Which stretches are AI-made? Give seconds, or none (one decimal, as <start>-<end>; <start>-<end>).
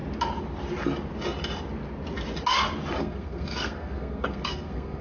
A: 3.0-5.0